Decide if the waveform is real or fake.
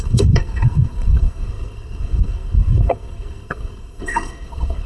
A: fake